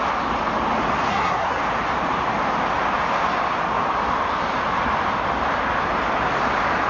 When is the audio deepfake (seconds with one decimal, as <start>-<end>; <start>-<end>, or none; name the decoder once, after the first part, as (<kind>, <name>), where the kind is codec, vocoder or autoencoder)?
1.1-1.6 (codec, SNAC)